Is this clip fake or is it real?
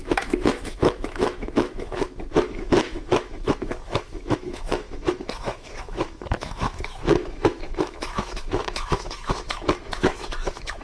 fake